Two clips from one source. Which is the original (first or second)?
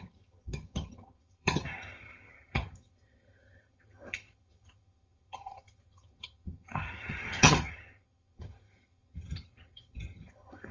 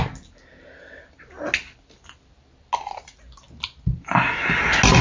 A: second